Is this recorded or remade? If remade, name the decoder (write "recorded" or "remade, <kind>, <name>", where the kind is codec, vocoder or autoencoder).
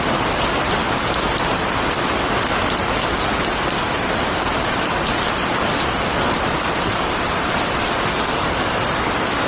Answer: recorded